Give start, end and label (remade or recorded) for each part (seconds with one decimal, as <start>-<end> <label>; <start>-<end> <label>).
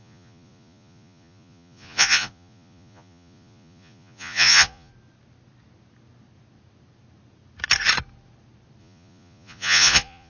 0.0-4.9 remade; 4.9-8.8 recorded; 8.8-10.3 remade